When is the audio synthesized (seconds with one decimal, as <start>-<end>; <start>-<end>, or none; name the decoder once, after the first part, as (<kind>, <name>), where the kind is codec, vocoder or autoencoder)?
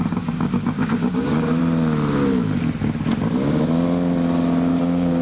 0.0-1.6 (codec, DAC); 4.7-5.2